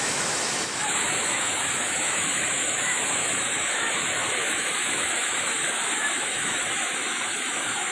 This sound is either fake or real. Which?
fake